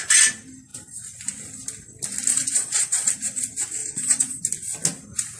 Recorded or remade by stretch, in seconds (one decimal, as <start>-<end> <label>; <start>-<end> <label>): 0.0-2.3 recorded; 2.3-3.1 remade; 3.1-3.8 recorded; 3.8-4.4 remade; 4.4-5.4 recorded